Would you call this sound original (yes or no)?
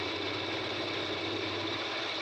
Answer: no